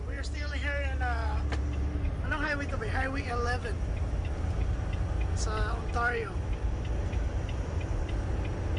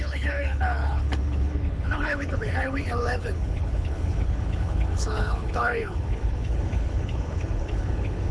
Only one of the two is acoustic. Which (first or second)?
first